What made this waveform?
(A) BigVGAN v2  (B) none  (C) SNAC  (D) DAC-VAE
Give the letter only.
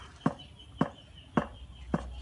B